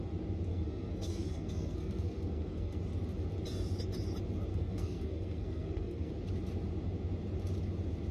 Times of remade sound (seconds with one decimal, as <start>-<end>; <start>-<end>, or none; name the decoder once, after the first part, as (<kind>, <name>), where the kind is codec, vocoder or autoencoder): 0.5-2.8 (codec, SNAC); 4.5-6.1